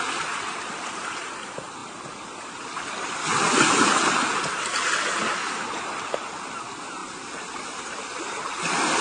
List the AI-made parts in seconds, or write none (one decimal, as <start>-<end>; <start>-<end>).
none